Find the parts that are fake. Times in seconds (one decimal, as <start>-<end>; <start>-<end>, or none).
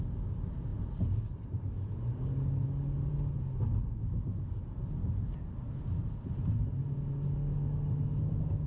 none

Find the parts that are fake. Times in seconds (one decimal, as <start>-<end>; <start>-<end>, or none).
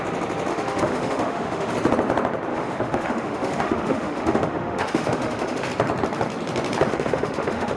0.5-1.7; 2.5-5.7; 6.9-7.8